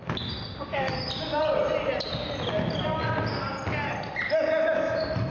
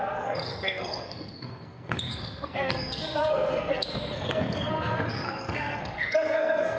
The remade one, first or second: second